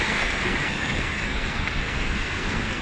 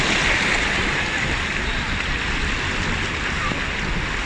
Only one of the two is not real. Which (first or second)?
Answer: first